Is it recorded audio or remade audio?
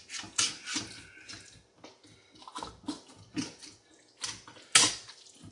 recorded